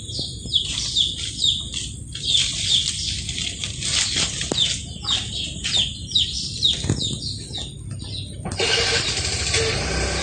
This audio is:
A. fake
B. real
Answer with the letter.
B